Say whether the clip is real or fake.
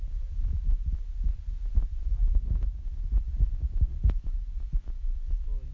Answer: real